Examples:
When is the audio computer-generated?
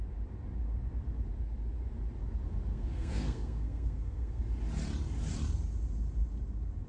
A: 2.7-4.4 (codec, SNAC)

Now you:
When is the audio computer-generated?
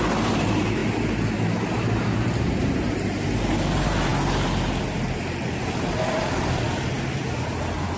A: none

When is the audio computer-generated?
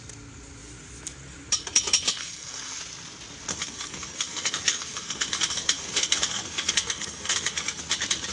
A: 2.2-2.8 (codec, SNAC); 3.5-7.8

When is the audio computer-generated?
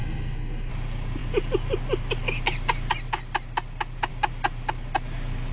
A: 0.0-0.7 (codec, SNAC)